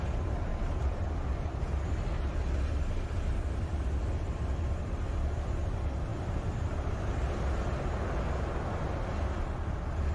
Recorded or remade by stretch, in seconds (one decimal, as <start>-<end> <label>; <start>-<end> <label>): 0.0-0.5 recorded; 0.5-1.6 remade; 1.6-3.7 recorded; 3.7-5.0 remade; 5.0-6.1 recorded; 6.1-7.1 remade; 7.1-10.1 recorded